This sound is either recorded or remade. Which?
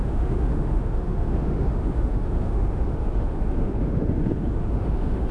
remade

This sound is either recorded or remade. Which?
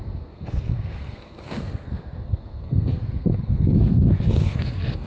remade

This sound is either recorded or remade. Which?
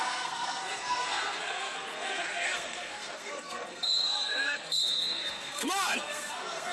remade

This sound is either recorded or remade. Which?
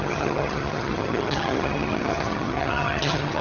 remade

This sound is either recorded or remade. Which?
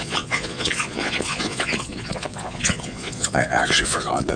remade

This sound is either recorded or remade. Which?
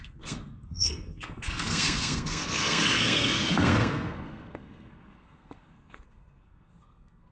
remade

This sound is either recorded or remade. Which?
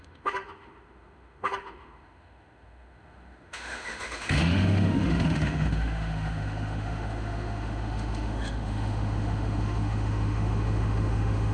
remade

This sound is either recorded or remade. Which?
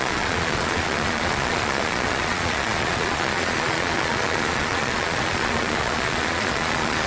remade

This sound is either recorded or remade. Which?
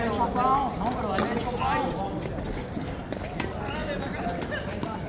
recorded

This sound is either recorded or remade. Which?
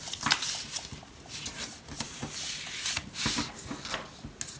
recorded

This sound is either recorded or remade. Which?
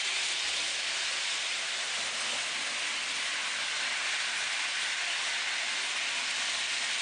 recorded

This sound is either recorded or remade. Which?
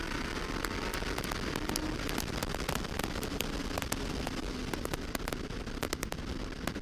recorded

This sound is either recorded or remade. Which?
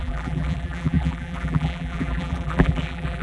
remade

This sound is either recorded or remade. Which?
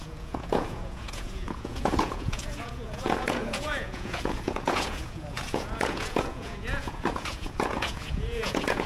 remade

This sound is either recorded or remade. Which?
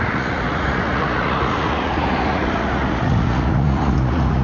remade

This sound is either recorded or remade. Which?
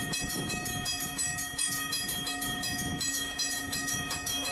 remade